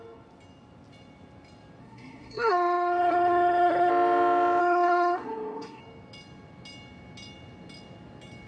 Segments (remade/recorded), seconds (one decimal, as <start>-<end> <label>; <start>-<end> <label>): 0.0-1.8 recorded; 1.8-3.9 remade; 3.9-4.6 recorded; 4.6-5.8 remade; 5.8-8.5 recorded